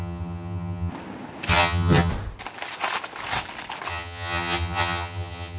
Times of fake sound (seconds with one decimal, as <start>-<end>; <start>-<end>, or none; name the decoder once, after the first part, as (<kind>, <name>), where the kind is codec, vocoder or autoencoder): 0.0-0.9 (vocoder, HiFi-GAN); 1.5-2.1; 3.9-5.6